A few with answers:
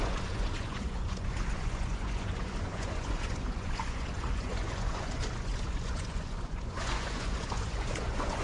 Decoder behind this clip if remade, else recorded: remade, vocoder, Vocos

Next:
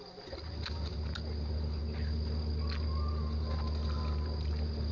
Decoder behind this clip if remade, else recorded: recorded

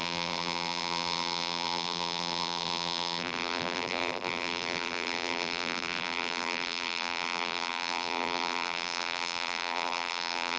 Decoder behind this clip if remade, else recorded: remade, vocoder, BigVGAN v2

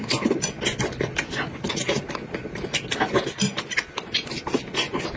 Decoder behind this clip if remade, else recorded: recorded